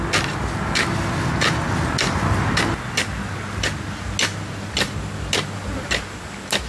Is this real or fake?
real